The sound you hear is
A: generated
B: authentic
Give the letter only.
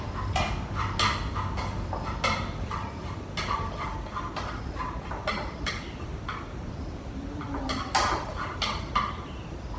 B